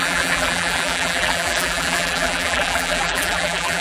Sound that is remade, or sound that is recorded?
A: remade